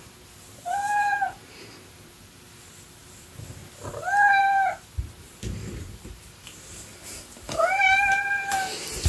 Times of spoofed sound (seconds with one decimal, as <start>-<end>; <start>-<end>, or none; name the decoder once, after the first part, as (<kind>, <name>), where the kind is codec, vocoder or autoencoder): 0.0-3.6 (vocoder, BigVGAN v2); 4.4-6.9; 7.7-9.1